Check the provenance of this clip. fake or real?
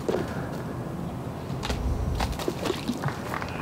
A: fake